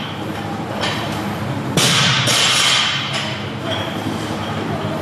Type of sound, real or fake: fake